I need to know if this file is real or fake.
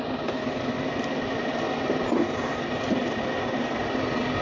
real